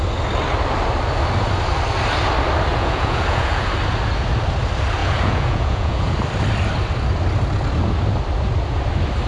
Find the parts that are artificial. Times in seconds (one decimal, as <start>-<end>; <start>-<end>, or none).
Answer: 2.7-3.7; 5.0-6.1

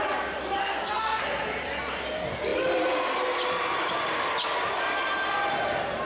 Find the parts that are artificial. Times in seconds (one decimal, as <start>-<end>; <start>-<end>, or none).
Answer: 0.6-1.2

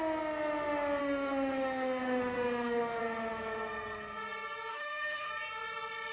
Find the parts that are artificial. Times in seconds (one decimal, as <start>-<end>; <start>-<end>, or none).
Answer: 1.0-3.0; 4.7-5.3

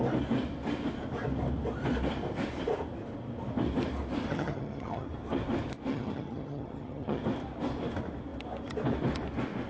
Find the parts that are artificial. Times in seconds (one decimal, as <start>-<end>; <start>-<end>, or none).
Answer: 4.3-5.1; 5.9-7.2